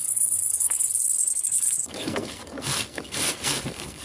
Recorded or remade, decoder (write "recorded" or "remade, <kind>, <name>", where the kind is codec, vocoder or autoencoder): remade, codec, SNAC